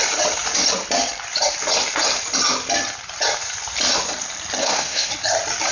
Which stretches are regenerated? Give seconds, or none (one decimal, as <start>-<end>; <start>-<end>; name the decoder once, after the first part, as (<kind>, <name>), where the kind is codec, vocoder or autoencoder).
4.6-5.1 (codec, SNAC)